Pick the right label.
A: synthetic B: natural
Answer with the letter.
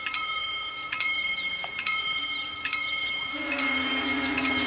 A